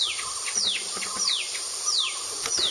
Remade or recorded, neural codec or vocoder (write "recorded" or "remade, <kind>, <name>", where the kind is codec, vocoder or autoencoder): remade, vocoder, BigVGAN v2